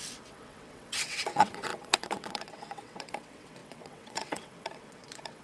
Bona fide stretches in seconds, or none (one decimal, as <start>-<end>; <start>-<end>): none

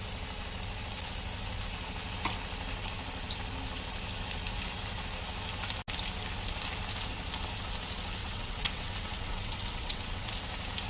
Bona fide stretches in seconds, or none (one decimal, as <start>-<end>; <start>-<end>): 0.0-8.2; 10.3-10.9

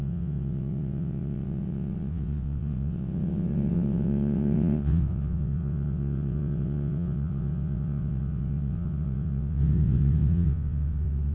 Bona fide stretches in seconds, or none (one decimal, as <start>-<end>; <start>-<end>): none

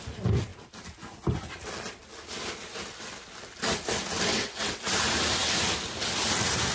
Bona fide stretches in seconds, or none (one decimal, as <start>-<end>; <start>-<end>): 0.0-4.3; 4.8-6.7